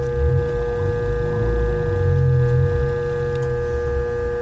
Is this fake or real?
real